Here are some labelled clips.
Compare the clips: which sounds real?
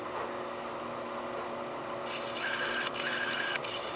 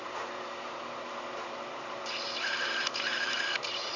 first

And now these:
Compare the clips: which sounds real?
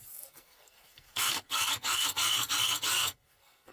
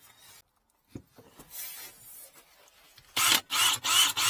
second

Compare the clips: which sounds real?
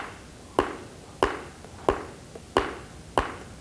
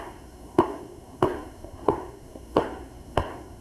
first